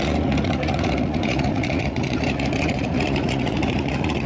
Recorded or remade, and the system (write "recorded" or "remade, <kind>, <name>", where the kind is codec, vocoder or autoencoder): remade, vocoder, Vocos